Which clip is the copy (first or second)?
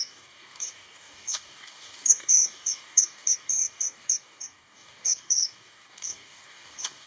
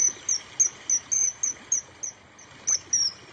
first